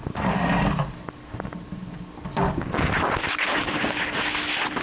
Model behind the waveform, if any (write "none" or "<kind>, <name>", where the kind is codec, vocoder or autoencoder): none